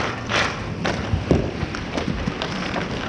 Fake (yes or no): yes